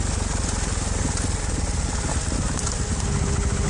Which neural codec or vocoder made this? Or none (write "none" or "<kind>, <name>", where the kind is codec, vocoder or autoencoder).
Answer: none